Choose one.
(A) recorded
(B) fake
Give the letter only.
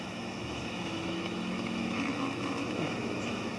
B